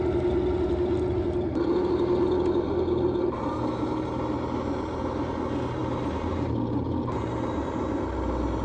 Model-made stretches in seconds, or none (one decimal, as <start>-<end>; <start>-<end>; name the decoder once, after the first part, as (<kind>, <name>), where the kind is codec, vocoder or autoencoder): none